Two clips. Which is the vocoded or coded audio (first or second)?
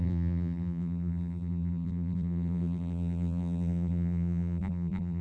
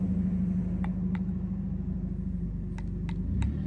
first